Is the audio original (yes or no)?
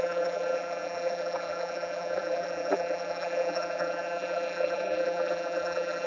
no